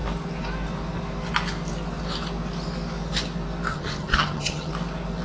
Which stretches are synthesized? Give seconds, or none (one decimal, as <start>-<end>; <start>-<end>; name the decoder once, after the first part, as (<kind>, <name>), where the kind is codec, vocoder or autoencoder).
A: 3.7-4.7 (vocoder, HiFi-GAN)